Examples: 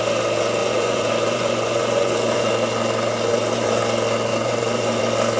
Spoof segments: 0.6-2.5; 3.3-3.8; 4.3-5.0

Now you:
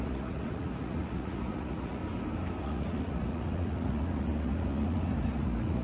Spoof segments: 0.0-2.0; 2.6-5.8

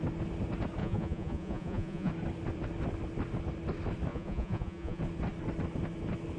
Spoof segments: 0.8-2.1; 4.1-5.0

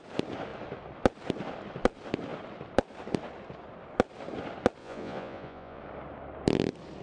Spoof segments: 4.8-5.8